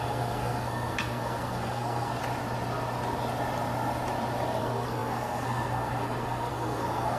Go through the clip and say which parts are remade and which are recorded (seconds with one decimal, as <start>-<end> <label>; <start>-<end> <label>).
0.0-2.2 remade; 2.2-4.6 recorded; 4.6-7.2 remade